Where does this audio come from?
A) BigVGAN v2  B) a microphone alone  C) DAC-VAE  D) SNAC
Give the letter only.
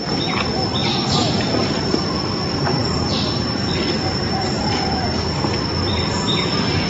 A